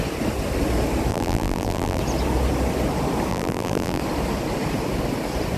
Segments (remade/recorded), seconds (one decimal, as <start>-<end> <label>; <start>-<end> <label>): 0.0-1.1 recorded; 1.1-2.0 remade; 2.0-3.3 recorded; 3.3-4.0 remade; 4.0-5.6 recorded